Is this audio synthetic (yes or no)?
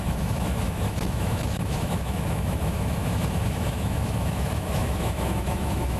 yes